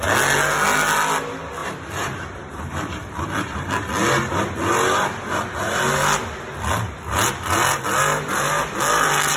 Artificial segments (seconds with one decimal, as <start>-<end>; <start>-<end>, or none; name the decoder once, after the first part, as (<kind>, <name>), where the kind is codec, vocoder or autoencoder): 1.6-3.7 (vocoder, BigVGAN v2)